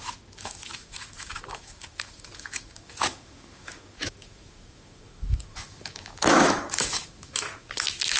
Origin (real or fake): fake